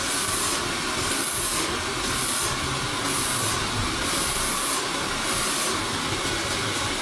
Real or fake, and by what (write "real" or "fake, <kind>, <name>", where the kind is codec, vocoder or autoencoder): real